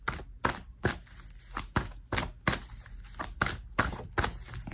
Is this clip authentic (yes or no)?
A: yes